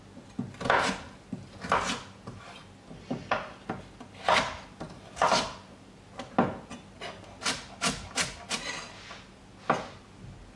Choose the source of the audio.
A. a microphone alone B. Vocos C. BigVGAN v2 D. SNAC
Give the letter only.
A